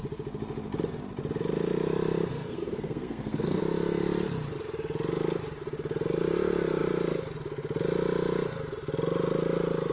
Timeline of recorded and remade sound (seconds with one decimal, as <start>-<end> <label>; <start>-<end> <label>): 0.0-2.3 recorded; 2.3-3.6 remade; 3.6-9.9 recorded